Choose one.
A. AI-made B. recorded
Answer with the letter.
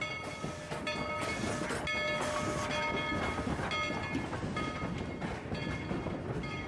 B